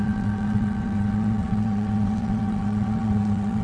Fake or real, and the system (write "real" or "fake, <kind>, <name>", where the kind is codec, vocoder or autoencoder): fake, vocoder, WaveNeXt